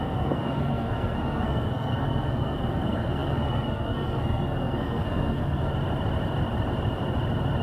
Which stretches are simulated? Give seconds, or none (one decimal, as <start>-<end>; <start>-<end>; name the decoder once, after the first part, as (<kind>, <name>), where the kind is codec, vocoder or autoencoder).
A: 0.0-5.7 (codec, SNAC)